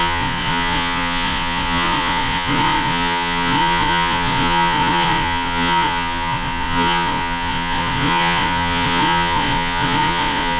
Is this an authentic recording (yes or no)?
no